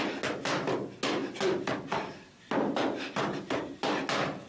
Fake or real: real